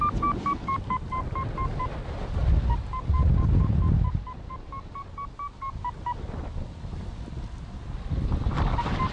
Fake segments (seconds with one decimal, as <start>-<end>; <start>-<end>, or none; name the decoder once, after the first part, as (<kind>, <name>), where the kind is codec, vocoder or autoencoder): none